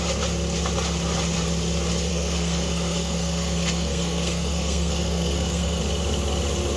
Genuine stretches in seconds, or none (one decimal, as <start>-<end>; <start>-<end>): 0.0-2.1; 5.8-6.8